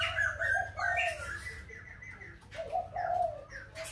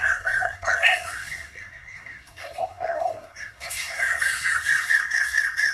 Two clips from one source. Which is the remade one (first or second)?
second